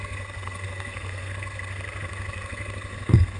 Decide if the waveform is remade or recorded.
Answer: remade